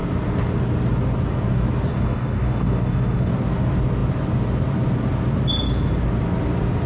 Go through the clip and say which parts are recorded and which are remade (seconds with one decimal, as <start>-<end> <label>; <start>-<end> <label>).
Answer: 0.0-1.9 recorded; 1.9-3.3 remade; 3.3-6.9 recorded